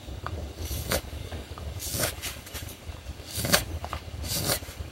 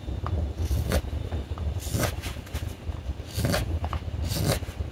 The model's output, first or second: first